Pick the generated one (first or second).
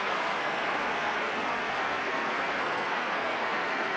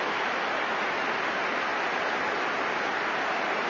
first